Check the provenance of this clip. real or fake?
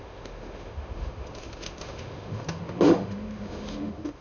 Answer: fake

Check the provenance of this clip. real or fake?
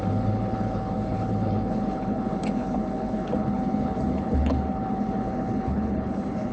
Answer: fake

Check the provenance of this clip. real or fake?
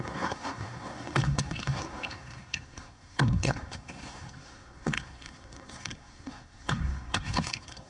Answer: fake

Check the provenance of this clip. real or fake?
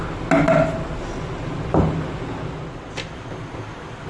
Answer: real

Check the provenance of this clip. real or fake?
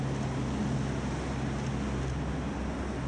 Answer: real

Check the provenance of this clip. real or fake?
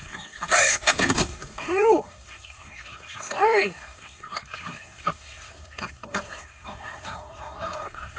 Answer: fake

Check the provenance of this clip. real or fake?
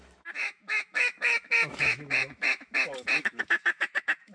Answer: fake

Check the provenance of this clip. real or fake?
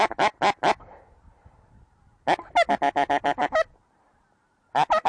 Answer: real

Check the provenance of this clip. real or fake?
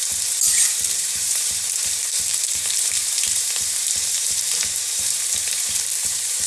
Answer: fake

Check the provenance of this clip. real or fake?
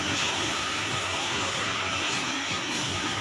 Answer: fake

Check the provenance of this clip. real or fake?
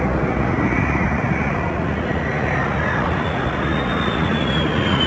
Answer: fake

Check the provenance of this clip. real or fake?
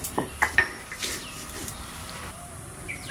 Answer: fake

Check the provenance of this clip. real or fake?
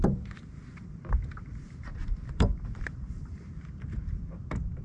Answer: fake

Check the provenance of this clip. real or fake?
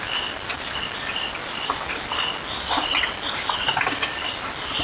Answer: real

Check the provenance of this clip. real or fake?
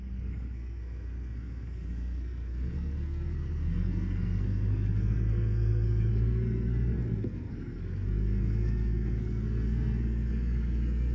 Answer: fake